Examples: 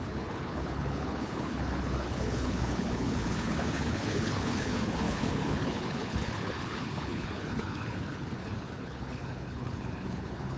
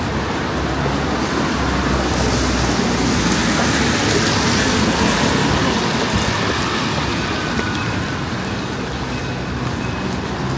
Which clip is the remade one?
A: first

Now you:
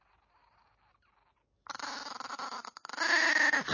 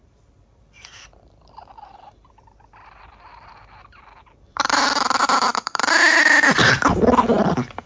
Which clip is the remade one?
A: second